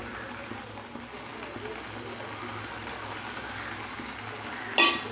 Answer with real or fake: real